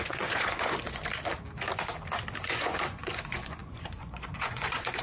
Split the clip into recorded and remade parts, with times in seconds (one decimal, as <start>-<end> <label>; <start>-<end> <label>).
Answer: 0.0-1.0 remade; 1.0-2.4 recorded; 2.4-5.0 remade